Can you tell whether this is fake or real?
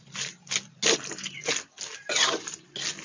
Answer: real